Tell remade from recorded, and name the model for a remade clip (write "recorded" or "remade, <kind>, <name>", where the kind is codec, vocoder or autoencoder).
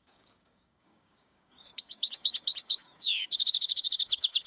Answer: remade, codec, DAC